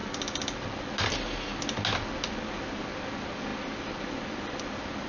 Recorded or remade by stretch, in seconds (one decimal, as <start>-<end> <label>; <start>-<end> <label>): 0.0-5.1 recorded